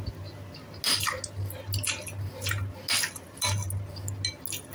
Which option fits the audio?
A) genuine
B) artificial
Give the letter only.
A